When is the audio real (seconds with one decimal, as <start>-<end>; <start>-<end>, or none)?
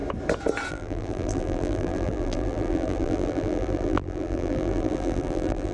0.0-0.7